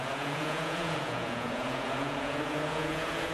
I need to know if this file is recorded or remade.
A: remade